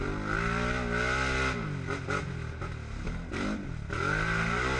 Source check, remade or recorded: recorded